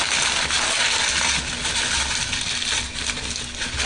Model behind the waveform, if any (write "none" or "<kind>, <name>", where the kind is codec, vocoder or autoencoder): none